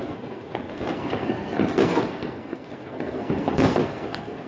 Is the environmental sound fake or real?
fake